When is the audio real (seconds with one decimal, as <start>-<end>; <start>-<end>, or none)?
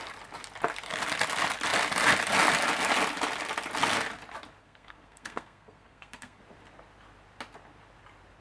0.0-4.6; 6.4-8.4